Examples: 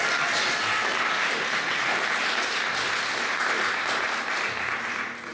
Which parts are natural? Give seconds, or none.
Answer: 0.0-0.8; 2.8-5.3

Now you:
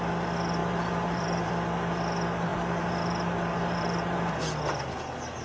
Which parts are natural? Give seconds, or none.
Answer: 0.0-0.6; 1.5-2.5; 4.4-5.4

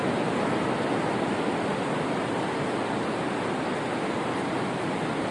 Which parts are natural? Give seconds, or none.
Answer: 0.0-5.3

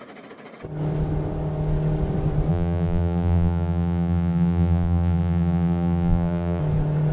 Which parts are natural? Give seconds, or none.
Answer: 0.0-2.5; 6.6-7.1

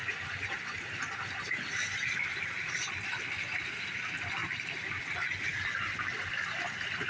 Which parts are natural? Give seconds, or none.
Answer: 2.0-7.1